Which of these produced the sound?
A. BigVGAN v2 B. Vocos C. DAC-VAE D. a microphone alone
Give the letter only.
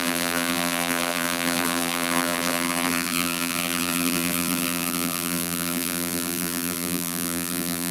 A